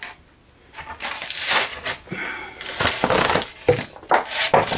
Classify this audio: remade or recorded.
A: recorded